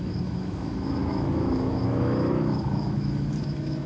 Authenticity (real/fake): fake